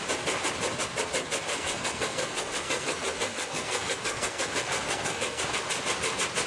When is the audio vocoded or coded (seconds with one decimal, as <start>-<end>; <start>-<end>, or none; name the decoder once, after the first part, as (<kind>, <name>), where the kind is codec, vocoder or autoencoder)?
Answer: 1.5-5.4 (codec, SNAC)